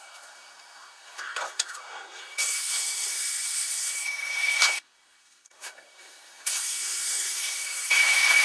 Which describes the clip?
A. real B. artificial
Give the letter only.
B